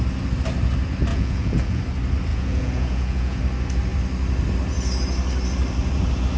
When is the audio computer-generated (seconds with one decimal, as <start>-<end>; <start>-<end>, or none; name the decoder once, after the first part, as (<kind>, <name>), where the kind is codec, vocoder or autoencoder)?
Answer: 1.1-1.8 (vocoder, Vocos); 2.3-3.4